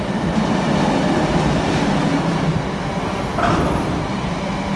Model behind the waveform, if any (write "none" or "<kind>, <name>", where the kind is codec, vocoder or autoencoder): none